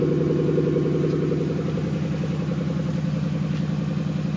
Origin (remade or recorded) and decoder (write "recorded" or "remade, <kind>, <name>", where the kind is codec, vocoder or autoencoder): recorded